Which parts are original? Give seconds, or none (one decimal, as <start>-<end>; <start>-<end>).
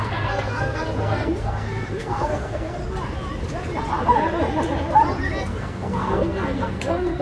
2.8-5.4